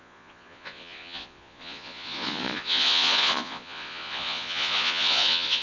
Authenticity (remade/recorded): remade